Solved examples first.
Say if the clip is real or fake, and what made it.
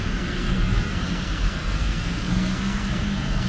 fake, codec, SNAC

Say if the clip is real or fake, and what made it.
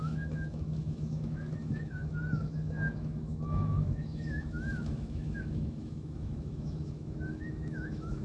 fake, autoencoder, DAC-VAE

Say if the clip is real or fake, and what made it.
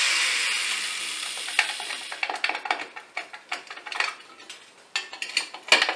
real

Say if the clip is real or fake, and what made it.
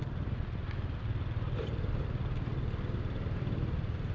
real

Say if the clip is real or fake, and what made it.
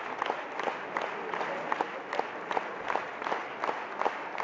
real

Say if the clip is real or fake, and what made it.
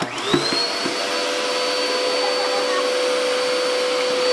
real